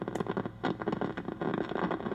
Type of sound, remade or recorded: recorded